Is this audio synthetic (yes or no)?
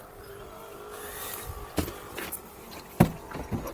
no